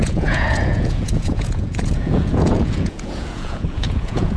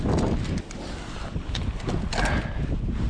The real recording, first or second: second